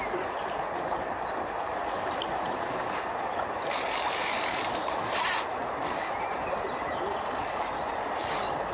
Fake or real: fake